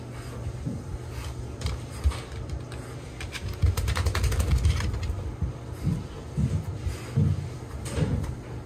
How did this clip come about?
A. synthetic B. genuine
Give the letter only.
B